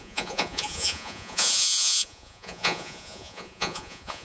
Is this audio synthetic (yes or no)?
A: yes